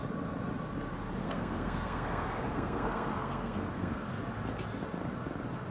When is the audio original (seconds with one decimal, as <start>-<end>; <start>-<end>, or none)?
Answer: 0.0-1.2; 4.2-5.7